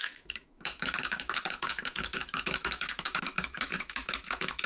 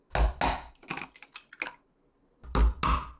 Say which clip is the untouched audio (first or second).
second